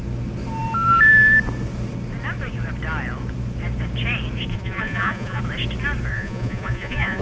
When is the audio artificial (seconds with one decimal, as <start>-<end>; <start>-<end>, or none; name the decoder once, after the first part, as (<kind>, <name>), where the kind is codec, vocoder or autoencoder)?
4.5-5.4 (vocoder, Vocos); 6.1-7.2